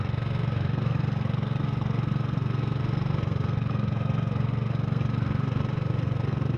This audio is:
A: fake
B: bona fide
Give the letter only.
A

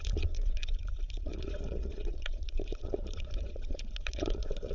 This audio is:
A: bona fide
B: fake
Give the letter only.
B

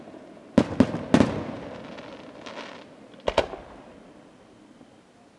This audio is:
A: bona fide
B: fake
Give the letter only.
A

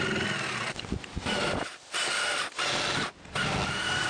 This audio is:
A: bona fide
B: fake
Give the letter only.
A